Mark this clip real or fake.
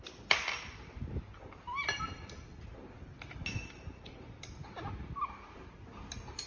real